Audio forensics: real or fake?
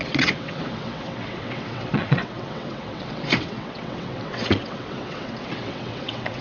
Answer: fake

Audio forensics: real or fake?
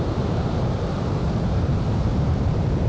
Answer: fake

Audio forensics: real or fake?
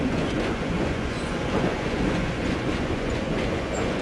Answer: fake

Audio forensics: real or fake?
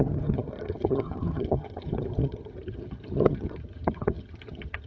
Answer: fake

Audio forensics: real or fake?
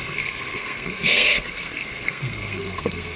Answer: fake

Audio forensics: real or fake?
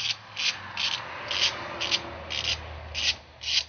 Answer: real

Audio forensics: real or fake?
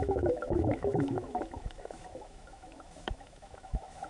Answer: fake